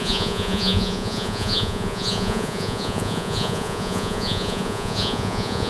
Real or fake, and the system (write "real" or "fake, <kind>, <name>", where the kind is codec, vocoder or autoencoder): fake, vocoder, Vocos